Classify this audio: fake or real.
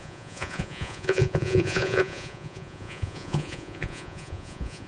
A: fake